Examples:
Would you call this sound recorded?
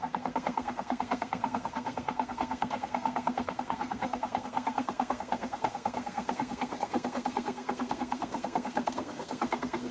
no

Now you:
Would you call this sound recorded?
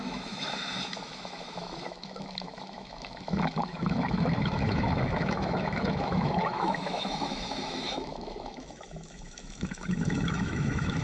no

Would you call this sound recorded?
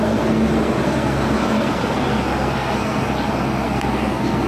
no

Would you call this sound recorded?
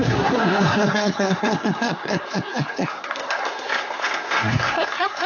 no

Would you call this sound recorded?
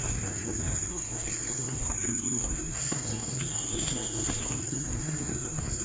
no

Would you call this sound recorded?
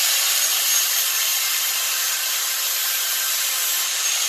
no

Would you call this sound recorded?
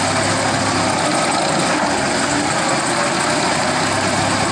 yes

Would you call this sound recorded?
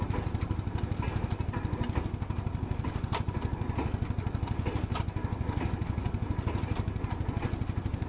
yes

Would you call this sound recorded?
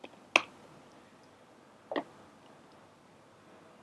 yes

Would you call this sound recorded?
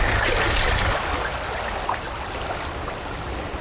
yes